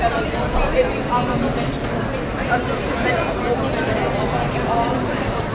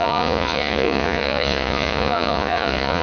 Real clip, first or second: first